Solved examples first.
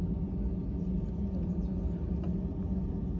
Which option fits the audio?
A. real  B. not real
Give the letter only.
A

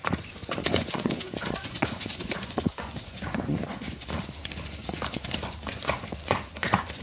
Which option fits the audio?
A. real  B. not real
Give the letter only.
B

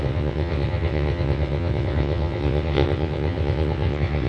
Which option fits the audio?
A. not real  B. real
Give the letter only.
A